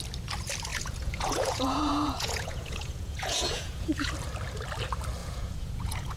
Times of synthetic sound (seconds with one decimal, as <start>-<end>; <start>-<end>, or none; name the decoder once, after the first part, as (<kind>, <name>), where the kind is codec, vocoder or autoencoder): 0.7-4.1 (vocoder, Vocos); 5.2-6.2